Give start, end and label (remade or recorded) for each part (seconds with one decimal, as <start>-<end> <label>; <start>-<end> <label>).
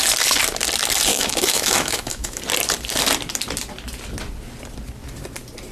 0.0-1.1 recorded; 1.1-2.4 remade; 2.4-5.7 recorded